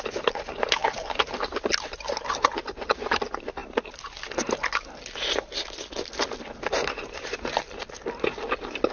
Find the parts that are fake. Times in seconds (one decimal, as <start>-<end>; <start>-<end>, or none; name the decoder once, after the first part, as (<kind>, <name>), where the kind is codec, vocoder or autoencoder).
none

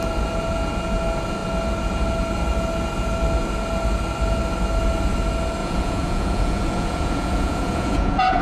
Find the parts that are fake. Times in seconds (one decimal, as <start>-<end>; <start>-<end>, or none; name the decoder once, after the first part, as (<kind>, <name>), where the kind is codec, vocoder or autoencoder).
5.6-8.4 (vocoder, Vocos)

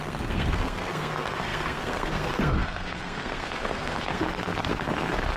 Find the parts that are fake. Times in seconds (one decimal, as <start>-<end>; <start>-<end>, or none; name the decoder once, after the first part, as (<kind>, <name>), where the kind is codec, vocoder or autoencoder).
0.0-5.4 (codec, SNAC)

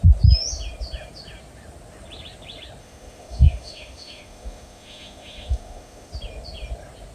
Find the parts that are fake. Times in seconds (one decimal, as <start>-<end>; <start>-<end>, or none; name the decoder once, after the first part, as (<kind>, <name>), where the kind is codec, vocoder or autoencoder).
2.8-6.1 (autoencoder, DAC-VAE)